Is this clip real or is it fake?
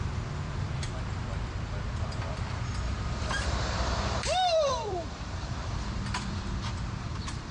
fake